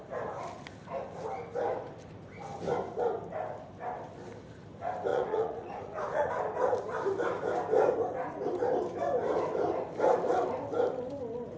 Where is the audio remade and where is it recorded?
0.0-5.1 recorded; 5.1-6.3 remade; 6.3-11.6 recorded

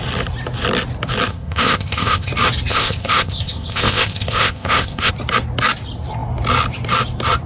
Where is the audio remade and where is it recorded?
0.0-1.3 recorded; 1.3-2.3 remade; 2.3-2.7 recorded; 2.7-5.1 remade; 5.1-7.5 recorded

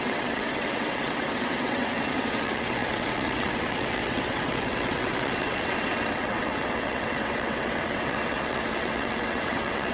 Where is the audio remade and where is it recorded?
0.0-9.9 remade

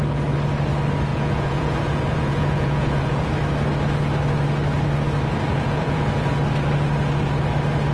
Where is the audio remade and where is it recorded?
0.0-1.1 recorded; 1.1-3.3 remade; 3.3-5.5 recorded; 5.5-6.1 remade; 6.1-7.9 recorded